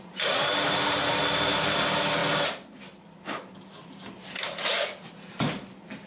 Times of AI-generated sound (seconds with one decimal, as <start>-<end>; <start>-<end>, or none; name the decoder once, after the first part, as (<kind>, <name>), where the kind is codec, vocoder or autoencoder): 0.0-2.2 (vocoder, BigVGAN v2)